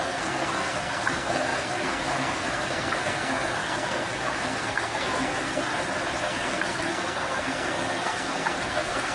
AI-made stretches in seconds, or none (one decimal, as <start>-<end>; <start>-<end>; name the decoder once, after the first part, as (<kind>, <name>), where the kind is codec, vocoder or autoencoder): 0.0-5.7 (codec, SNAC); 6.2-9.1